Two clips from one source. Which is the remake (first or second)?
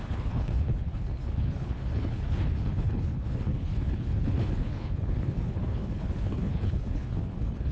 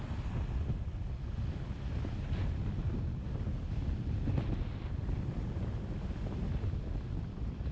first